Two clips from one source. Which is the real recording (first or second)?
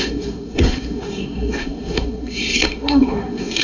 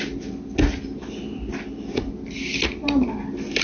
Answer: second